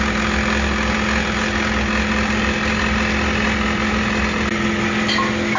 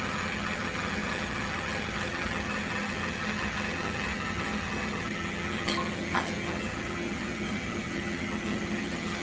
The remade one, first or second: second